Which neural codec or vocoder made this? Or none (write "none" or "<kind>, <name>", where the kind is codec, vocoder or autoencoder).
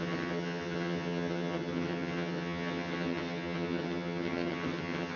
vocoder, HiFi-GAN